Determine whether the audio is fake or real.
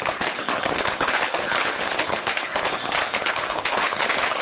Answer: fake